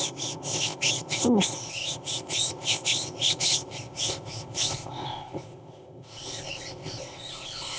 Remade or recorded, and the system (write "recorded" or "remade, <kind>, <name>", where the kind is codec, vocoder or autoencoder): remade, codec, ZipCodec